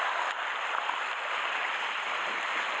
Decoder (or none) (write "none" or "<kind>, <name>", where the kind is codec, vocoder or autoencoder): vocoder, BigVGAN v2